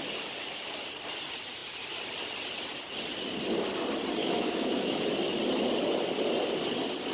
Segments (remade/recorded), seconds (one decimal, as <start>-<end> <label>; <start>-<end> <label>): 0.0-4.2 recorded; 4.2-5.0 remade; 5.0-7.1 recorded